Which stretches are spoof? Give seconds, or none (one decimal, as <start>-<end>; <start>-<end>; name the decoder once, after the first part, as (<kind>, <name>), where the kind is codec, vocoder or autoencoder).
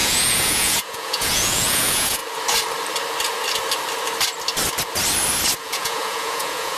0.0-2.2 (vocoder, Vocos); 5.6-6.8